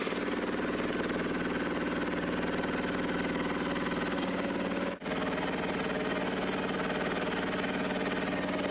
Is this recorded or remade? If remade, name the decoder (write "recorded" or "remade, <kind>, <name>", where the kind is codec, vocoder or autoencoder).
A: recorded